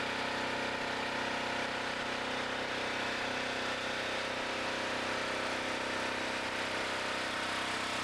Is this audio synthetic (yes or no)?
no